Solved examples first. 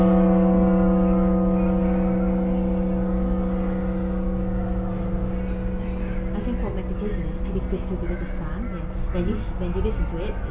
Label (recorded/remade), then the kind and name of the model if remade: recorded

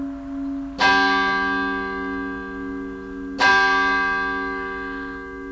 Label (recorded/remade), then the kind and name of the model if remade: recorded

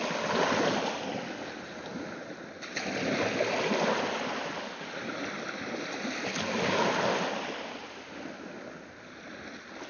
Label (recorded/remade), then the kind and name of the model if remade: recorded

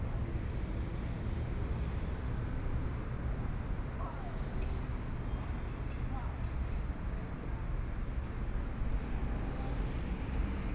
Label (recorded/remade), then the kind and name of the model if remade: recorded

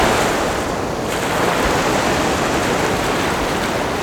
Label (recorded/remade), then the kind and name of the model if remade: recorded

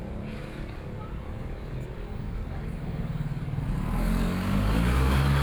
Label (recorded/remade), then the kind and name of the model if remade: remade, codec, DAC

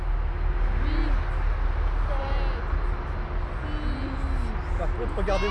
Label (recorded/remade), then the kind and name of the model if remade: recorded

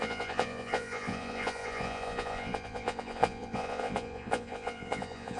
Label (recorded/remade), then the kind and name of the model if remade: remade, vocoder, Vocos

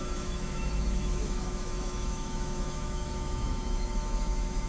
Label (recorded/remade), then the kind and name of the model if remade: remade, autoencoder, DAC-VAE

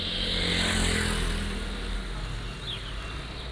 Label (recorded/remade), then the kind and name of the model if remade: recorded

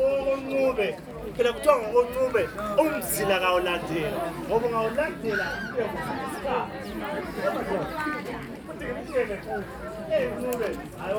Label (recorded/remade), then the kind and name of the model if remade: recorded